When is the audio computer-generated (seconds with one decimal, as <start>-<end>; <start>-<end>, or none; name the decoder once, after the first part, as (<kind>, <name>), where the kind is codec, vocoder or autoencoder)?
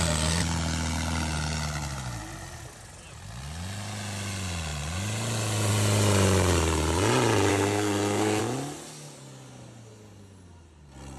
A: 7.5-8.4 (codec, SNAC)